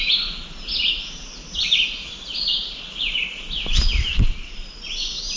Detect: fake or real real